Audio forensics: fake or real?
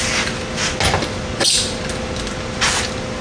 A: real